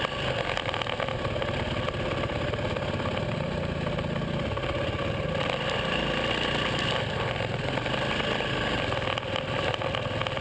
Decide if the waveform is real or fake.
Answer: real